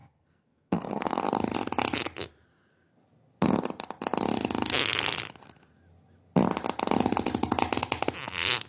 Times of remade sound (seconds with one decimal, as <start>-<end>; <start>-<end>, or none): 0.0-1.2